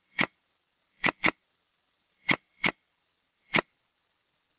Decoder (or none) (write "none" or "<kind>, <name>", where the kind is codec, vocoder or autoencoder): vocoder, WaveNeXt